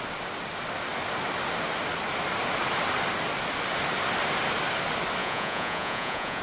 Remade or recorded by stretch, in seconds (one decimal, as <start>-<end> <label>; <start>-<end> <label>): 0.0-5.2 recorded; 5.2-6.4 remade